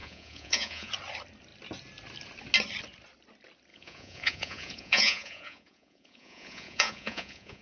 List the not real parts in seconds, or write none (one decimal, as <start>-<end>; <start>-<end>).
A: 0.0-0.9; 3.7-7.6